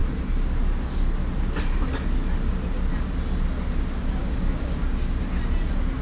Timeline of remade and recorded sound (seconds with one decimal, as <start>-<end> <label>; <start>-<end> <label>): 0.0-4.2 recorded; 4.2-5.2 remade; 5.2-6.0 recorded